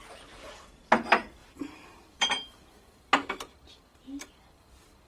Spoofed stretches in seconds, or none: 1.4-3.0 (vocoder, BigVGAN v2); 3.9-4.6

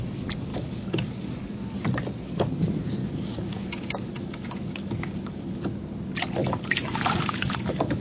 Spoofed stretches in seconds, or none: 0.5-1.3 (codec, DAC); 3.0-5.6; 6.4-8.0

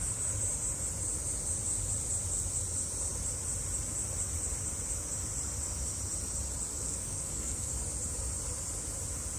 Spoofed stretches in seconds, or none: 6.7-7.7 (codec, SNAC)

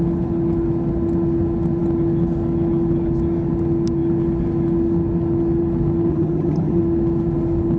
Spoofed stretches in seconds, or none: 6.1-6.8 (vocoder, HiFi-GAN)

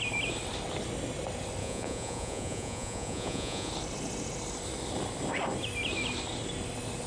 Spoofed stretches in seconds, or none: 1.6-3.7 (vocoder, Vocos)

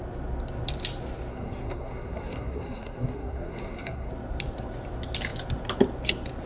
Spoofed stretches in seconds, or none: 1.3-4.1 (codec, SNAC)

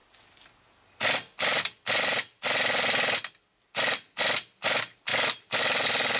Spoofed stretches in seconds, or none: none